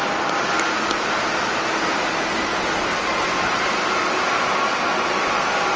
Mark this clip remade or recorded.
recorded